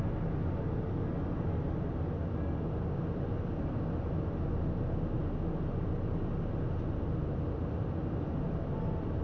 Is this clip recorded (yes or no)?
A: yes